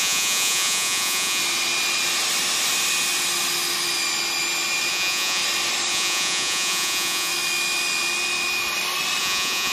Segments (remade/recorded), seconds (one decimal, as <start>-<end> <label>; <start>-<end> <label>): 0.0-1.4 remade; 1.4-4.9 recorded; 4.9-5.4 remade; 5.4-5.9 recorded; 5.9-7.3 remade; 7.3-9.2 recorded; 9.2-9.7 remade